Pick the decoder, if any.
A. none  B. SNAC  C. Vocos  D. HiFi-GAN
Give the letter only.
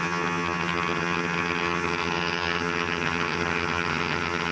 D